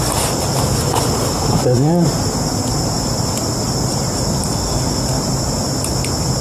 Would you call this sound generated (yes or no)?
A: no